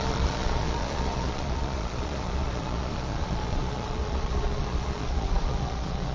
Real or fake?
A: fake